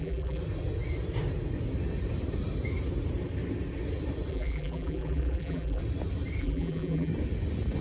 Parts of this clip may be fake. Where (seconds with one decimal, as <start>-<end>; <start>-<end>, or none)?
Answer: 0.0-0.4; 4.3-5.8; 6.4-7.1